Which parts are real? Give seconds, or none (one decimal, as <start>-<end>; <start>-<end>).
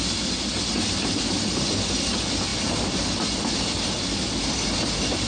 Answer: 0.0-5.3